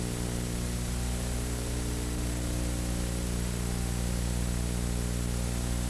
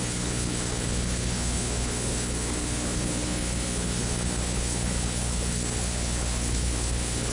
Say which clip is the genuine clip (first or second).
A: first